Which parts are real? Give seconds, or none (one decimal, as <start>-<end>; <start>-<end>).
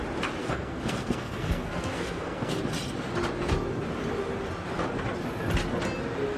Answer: 0.0-0.4; 2.6-6.4